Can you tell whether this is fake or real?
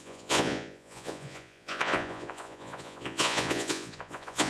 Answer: fake